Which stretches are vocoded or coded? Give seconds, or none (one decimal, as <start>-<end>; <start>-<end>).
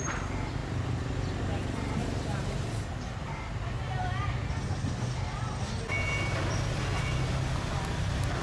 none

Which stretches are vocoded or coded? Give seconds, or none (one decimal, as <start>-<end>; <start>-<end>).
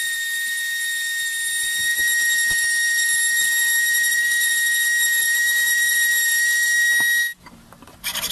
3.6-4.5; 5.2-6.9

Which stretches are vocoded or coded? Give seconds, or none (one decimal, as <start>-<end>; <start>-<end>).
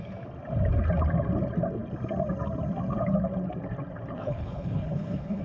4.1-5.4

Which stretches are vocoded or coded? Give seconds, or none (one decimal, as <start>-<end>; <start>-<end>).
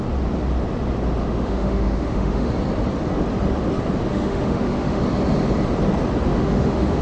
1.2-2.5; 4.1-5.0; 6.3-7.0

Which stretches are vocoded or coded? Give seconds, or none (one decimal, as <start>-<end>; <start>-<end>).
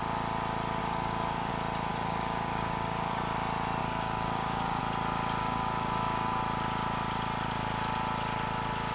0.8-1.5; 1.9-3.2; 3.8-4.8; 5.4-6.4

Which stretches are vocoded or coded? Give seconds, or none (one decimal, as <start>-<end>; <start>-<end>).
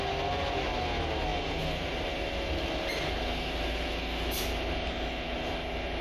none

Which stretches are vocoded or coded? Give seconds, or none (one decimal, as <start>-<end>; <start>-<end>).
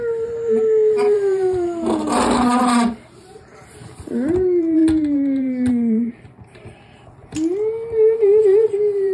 0.0-9.1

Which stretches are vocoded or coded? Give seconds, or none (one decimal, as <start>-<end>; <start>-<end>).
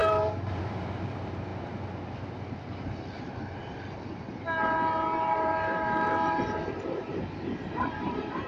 0.0-1.5; 5.2-7.1; 7.8-8.5